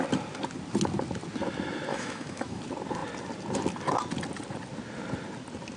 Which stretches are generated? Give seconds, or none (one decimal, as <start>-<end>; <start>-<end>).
1.9-2.6